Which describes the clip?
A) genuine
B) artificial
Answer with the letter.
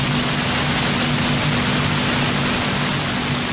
A